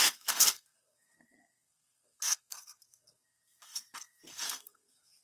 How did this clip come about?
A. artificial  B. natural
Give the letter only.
A